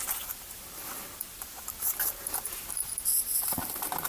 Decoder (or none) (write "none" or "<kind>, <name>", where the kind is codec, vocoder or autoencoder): vocoder, BigVGAN v2